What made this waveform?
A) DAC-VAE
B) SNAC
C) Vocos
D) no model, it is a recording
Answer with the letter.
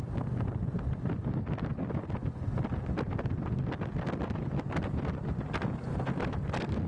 D